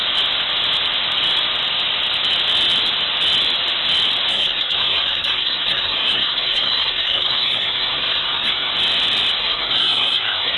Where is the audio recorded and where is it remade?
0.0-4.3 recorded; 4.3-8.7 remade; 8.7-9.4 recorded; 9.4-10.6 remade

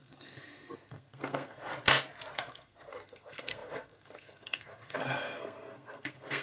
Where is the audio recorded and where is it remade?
0.0-1.7 remade; 1.7-2.3 recorded; 2.3-6.4 remade

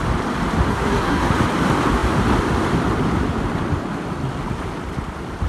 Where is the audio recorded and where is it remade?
0.0-0.7 recorded; 0.7-1.3 remade; 1.3-5.5 recorded

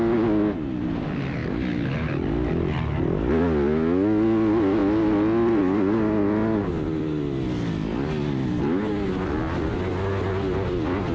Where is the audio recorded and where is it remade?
0.0-11.1 recorded

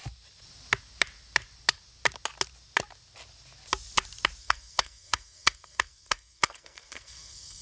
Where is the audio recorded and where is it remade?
0.0-4.4 recorded; 4.4-7.6 remade

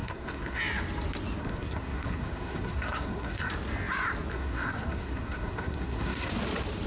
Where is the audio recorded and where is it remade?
0.0-0.6 remade; 0.6-1.4 recorded; 1.4-3.5 remade; 3.5-4.3 recorded; 4.3-6.3 remade; 6.3-6.9 recorded

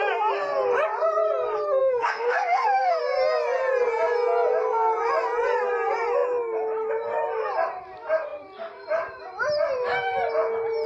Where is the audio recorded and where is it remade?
0.0-1.8 recorded; 1.8-3.0 remade; 3.0-10.9 recorded

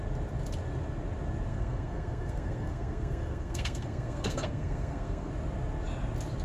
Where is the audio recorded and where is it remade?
0.0-1.5 recorded; 1.5-5.3 remade; 5.3-6.4 recorded